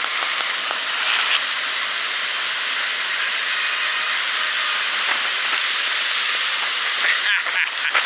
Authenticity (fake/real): real